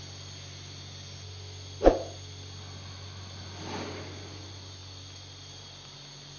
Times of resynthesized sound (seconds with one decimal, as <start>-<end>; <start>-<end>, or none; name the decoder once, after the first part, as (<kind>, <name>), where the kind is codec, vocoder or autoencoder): none